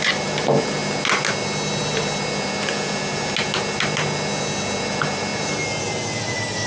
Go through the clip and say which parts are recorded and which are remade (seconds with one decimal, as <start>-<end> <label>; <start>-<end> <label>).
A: 0.0-0.8 remade; 0.8-4.8 recorded; 4.8-5.3 remade; 5.3-5.8 recorded; 5.8-6.7 remade